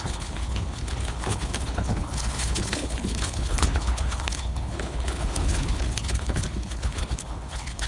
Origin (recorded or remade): remade